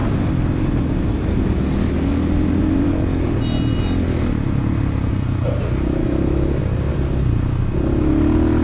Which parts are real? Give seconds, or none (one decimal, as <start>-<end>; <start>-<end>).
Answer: 0.0-6.0; 6.6-8.6